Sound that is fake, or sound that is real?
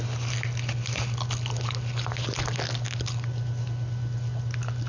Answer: real